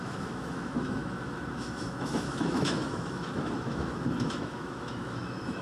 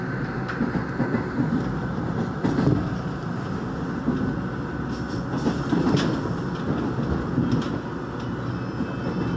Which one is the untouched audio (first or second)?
second